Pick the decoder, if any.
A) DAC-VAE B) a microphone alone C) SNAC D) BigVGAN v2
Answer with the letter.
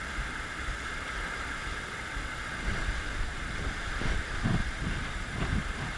B